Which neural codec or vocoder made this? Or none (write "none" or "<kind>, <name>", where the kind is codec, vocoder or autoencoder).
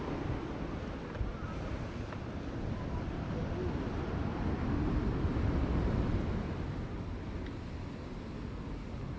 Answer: none